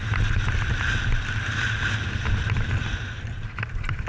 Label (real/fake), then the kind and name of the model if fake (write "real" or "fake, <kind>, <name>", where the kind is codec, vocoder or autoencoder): real